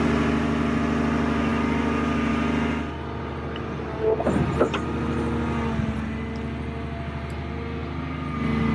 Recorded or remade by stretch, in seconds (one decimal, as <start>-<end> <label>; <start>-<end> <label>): 0.0-8.7 recorded